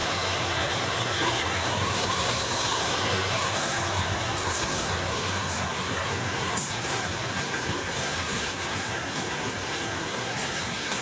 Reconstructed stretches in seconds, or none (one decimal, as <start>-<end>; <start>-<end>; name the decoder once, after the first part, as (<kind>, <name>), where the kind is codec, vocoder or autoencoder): 0.0-11.0 (codec, SNAC)